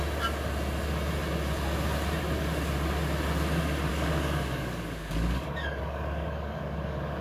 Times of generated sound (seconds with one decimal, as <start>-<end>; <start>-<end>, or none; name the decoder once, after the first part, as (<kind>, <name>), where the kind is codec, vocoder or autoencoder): 3.9-7.2 (codec, DAC)